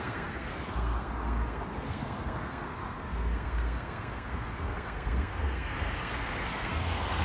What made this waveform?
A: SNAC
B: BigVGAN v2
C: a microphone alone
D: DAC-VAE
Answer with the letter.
A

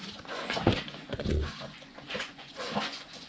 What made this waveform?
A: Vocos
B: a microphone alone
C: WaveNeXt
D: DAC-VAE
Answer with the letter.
A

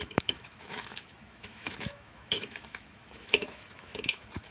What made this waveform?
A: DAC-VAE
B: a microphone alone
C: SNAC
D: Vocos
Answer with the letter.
A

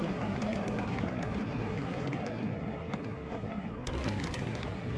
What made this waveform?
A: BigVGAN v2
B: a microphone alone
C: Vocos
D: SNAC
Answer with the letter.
D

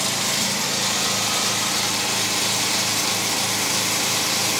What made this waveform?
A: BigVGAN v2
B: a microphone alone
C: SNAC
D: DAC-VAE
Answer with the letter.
B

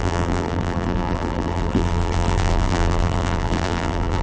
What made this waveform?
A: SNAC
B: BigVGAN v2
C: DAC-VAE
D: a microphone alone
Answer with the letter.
B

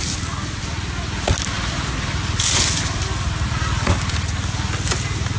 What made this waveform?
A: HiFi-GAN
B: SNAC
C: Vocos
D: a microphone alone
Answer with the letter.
D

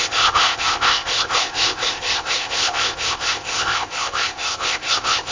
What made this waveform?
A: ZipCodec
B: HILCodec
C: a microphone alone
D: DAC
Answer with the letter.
A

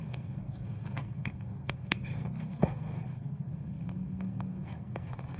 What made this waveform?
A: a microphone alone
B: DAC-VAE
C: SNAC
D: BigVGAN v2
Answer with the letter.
C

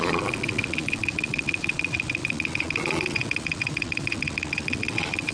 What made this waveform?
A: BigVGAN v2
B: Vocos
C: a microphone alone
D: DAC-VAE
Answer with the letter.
B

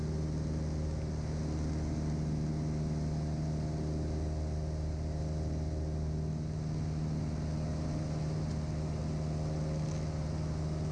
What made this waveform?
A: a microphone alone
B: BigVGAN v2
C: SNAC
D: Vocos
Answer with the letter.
A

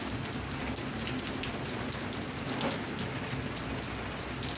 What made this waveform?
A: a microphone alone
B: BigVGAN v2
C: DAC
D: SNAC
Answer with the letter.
A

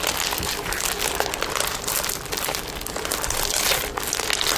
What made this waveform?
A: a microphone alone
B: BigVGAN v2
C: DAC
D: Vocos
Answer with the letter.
A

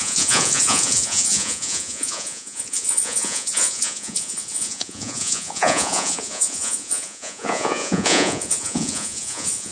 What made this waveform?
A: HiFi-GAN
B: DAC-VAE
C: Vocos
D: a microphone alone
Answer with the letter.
C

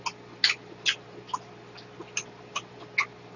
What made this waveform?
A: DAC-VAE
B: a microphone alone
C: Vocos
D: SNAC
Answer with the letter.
B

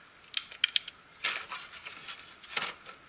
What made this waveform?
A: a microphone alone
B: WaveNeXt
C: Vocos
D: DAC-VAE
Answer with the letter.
A